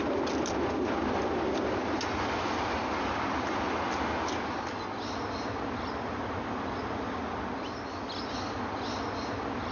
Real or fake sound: real